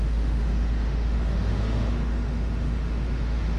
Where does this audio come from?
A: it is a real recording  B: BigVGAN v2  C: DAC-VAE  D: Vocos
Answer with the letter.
C